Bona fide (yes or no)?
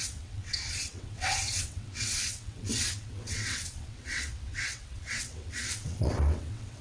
no